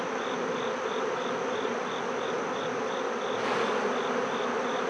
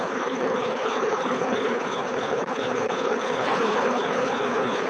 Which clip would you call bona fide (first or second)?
first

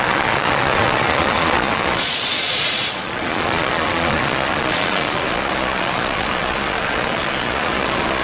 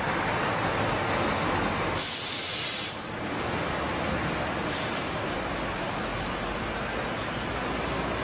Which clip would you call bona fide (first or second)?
second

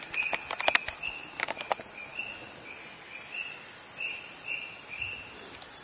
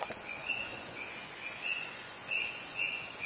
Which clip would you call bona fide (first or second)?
first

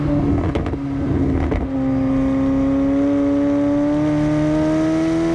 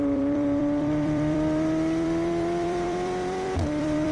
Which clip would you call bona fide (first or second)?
first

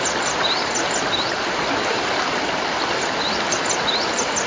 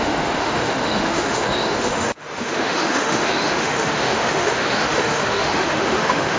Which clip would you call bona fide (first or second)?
first